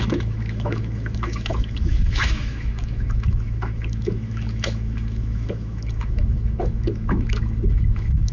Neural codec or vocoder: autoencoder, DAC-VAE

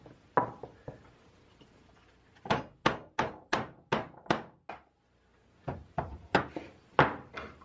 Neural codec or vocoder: none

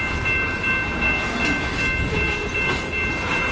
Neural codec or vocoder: none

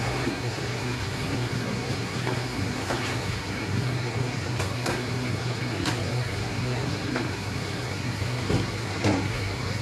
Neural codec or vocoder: codec, SNAC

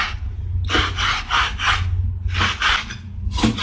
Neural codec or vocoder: none